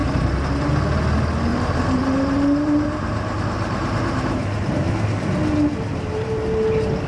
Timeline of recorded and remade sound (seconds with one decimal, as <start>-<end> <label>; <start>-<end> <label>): 0.0-0.7 remade; 0.7-1.5 recorded; 1.5-4.7 remade; 4.7-7.1 recorded